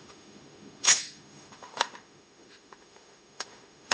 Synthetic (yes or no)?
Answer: yes